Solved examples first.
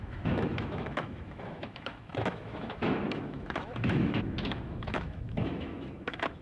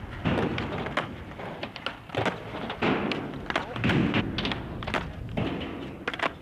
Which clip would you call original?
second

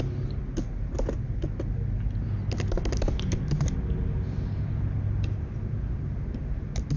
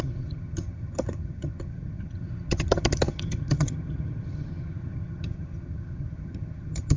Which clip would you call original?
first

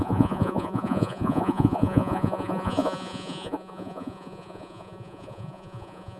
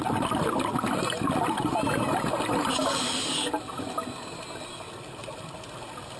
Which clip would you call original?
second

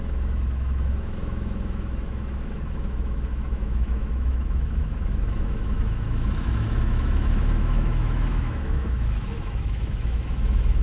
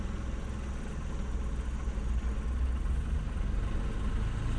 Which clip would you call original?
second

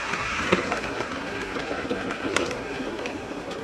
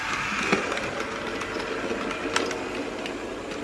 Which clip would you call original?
second